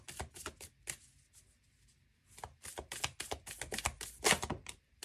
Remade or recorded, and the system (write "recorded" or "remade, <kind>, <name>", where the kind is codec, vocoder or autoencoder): recorded